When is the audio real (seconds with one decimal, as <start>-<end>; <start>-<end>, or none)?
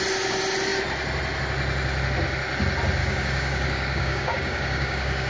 0.0-3.0